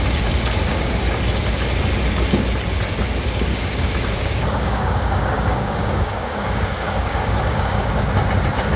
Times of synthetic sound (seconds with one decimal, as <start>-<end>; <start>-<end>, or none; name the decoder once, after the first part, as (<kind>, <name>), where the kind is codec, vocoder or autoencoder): 0.7-1.2 (codec, DAC); 3.5-7.9